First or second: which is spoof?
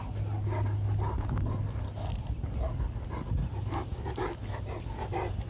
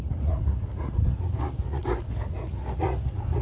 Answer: second